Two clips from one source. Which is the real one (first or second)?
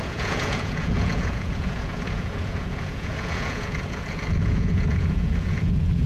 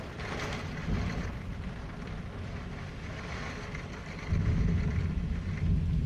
second